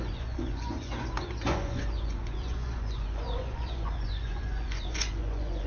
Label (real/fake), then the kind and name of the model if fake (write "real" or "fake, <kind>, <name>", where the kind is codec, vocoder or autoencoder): fake, vocoder, Vocos